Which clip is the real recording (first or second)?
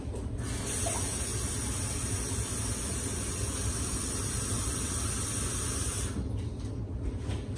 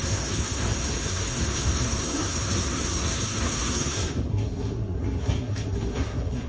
first